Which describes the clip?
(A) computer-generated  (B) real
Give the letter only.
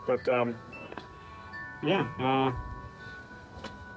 A